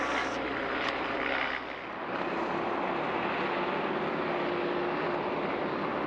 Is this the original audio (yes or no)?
yes